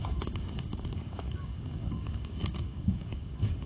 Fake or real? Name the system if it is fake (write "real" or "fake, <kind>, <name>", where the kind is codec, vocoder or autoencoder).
fake, codec, DAC